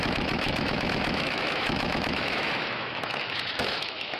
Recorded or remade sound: remade